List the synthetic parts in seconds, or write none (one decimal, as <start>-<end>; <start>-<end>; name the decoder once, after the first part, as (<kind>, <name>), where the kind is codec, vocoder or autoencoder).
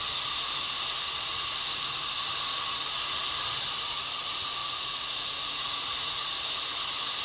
4.6-6.3 (vocoder, Vocos)